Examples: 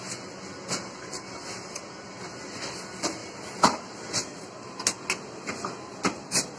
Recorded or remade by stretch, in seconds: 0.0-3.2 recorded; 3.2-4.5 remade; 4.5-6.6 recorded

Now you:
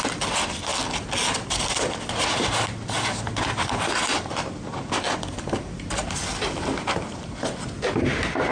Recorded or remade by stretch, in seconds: 0.0-8.5 recorded

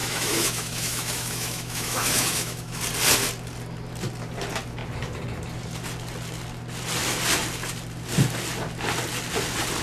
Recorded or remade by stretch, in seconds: 0.0-2.8 remade; 2.8-9.8 recorded

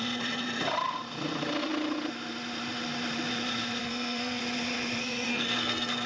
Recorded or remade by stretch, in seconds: 0.0-3.8 recorded; 3.8-4.4 remade; 4.4-5.0 recorded; 5.0-6.1 remade

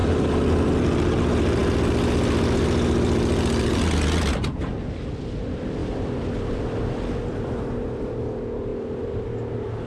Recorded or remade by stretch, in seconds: 0.0-0.7 remade; 0.7-5.8 recorded; 5.8-7.1 remade; 7.1-8.7 recorded; 8.7-9.3 remade; 9.3-9.9 recorded

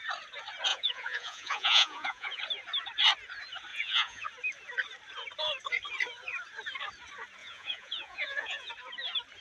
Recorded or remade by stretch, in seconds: 0.0-0.7 recorded; 0.7-2.4 remade; 2.4-3.7 recorded; 3.7-4.3 remade; 4.3-7.4 recorded; 7.4-8.7 remade; 8.7-9.4 recorded

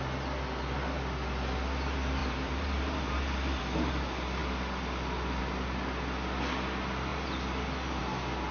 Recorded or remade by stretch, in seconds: 0.0-2.2 recorded; 2.2-3.6 remade; 3.6-8.5 recorded

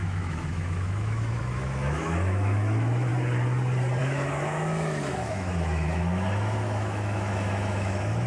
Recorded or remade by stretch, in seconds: 0.0-3.1 remade; 3.1-4.0 recorded; 4.0-8.3 remade